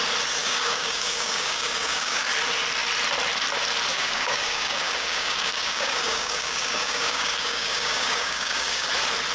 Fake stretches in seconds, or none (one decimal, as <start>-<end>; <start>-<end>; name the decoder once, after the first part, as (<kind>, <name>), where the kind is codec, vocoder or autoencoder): 0.4-2.3 (codec, DAC); 3.9-8.9